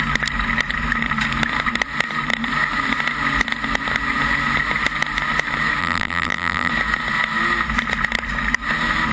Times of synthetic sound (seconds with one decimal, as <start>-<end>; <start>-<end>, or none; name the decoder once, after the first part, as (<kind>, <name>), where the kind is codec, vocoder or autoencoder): 5.8-6.7 (vocoder, BigVGAN v2)